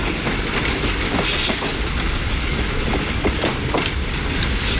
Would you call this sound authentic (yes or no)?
yes